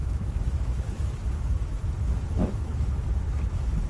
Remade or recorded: remade